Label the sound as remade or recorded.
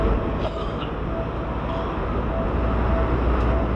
recorded